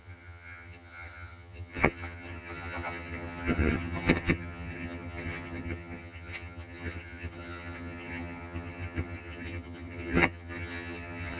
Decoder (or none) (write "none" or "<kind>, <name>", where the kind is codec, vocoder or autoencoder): vocoder, HiFi-GAN